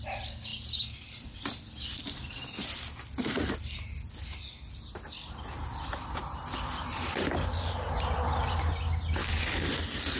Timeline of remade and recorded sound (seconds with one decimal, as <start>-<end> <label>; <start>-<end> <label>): 0.0-9.2 recorded; 9.2-9.7 remade; 9.7-10.2 recorded